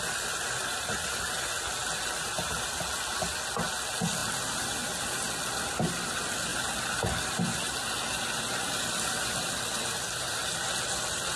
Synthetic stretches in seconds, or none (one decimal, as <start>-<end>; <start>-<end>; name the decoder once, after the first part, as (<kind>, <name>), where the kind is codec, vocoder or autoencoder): none